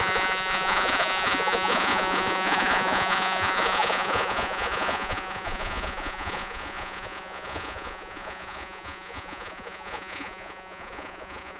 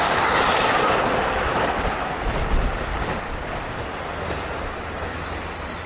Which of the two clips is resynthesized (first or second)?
first